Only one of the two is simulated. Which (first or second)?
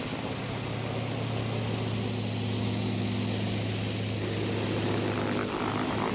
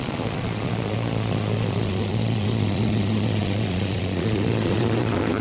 second